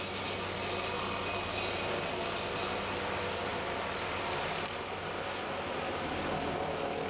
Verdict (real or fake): real